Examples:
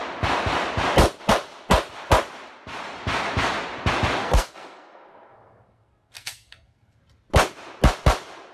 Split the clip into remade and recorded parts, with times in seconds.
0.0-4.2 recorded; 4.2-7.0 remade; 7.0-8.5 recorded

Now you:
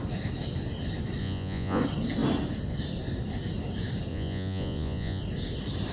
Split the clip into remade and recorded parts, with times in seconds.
0.0-1.2 recorded; 1.2-1.8 remade; 1.8-4.1 recorded; 4.1-5.2 remade; 5.2-5.9 recorded

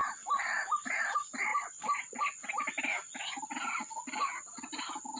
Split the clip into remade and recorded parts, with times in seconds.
0.0-5.2 recorded

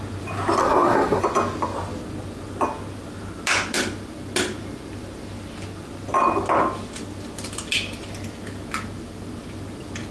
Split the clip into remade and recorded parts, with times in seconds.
0.0-0.6 recorded; 0.6-1.2 remade; 1.2-10.1 recorded

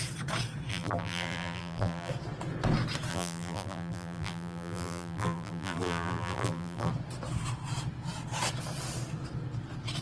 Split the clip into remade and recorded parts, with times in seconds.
0.0-0.7 recorded; 0.7-2.1 remade; 2.1-3.1 recorded; 3.1-6.9 remade; 6.9-10.0 recorded